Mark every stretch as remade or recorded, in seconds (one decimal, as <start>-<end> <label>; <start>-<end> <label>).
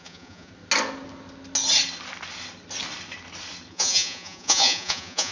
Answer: 0.0-0.5 remade; 0.5-3.7 recorded; 3.7-5.3 remade